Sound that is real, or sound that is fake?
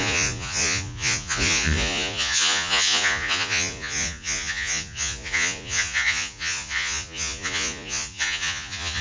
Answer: fake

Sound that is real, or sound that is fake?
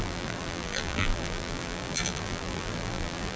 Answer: fake